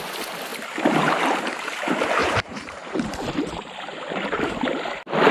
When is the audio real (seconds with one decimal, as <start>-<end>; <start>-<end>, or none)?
0.0-2.2; 4.4-5.3

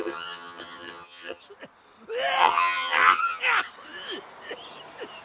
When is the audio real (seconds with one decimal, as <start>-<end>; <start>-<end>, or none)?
1.4-2.4; 3.4-5.2

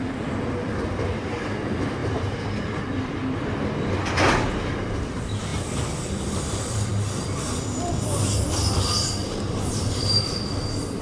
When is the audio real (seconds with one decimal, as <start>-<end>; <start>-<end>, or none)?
3.2-4.5

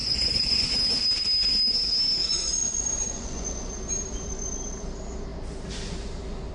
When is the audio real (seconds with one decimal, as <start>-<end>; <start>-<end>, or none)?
0.7-2.2; 3.7-6.5

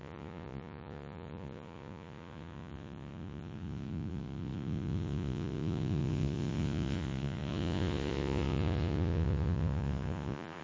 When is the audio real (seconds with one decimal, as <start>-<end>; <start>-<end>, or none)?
none